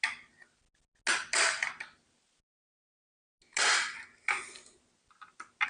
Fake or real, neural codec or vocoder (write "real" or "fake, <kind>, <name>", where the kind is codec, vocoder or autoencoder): real